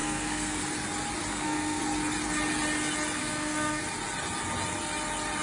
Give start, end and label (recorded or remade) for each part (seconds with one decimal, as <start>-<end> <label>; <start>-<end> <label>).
0.0-0.6 remade; 0.6-1.3 recorded; 1.3-1.8 remade; 1.8-3.2 recorded; 3.2-3.8 remade; 3.8-5.4 recorded